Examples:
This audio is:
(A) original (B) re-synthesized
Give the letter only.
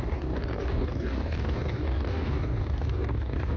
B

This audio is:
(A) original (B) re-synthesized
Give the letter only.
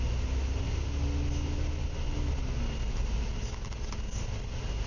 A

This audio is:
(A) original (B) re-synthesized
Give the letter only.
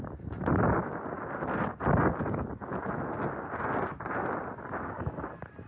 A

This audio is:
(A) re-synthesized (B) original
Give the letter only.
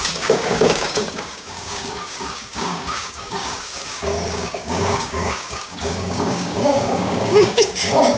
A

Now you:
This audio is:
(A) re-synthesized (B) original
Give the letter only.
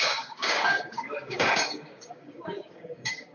A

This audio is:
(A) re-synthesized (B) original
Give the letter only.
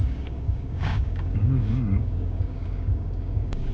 A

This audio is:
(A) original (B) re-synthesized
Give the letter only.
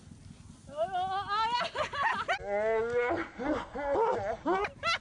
A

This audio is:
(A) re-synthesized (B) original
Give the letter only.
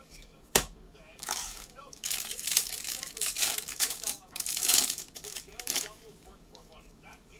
A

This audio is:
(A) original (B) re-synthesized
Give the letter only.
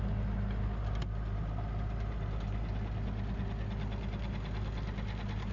A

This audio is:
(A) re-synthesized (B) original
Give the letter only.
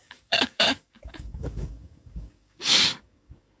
A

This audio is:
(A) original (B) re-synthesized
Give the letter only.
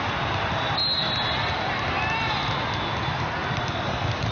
A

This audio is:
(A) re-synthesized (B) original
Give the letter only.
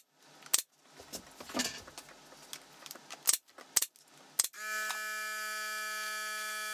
B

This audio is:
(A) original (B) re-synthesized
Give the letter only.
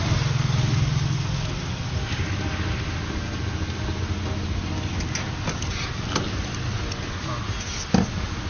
A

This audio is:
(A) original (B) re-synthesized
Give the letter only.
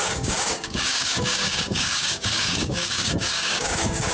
B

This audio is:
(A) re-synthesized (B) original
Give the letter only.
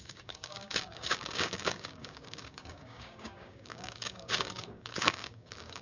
A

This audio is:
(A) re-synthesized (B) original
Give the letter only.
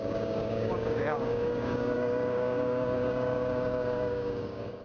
A